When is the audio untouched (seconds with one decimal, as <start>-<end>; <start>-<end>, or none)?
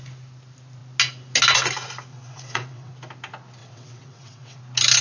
0.0-2.1; 2.9-3.6; 4.6-5.0